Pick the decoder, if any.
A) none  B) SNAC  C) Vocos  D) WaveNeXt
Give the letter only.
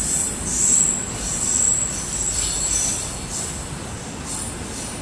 A